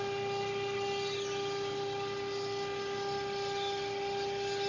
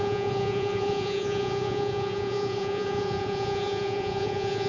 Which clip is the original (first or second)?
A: first